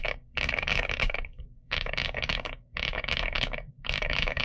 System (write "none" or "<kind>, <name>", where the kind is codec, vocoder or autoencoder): codec, DAC